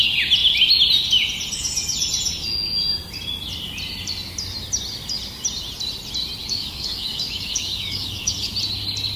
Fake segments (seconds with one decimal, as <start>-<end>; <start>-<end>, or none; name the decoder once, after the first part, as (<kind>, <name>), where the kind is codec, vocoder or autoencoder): 6.4-8.5 (codec, DAC)